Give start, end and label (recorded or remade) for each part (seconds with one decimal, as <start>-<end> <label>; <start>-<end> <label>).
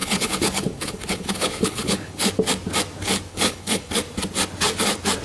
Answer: 0.0-2.3 remade; 2.3-3.3 recorded; 3.3-3.9 remade; 3.9-5.2 recorded